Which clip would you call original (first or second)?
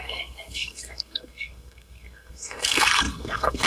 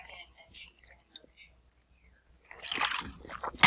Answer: second